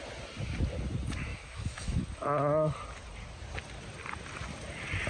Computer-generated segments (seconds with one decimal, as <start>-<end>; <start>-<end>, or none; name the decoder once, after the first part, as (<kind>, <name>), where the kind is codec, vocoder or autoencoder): 1.3-2.0 (autoencoder, DAC-VAE)